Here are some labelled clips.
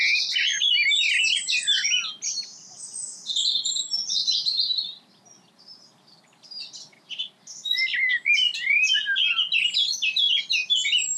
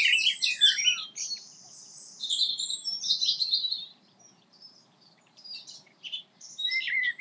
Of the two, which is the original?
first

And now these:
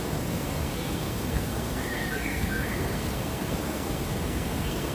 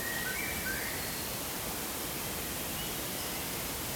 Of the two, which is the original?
second